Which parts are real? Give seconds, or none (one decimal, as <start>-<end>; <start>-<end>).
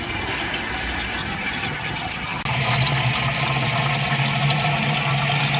0.0-1.2; 2.4-5.6